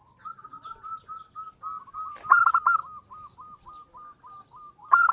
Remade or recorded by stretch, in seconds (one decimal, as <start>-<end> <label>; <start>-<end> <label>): 0.0-5.1 recorded

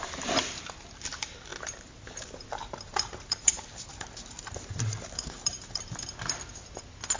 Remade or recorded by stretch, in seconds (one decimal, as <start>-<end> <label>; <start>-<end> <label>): 0.0-1.5 recorded; 1.5-5.8 remade; 5.8-7.2 recorded